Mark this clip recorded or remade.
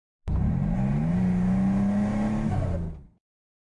recorded